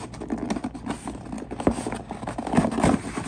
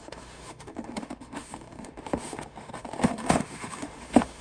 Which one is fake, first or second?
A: second